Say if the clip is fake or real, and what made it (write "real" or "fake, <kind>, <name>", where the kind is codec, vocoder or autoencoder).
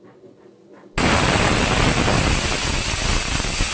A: real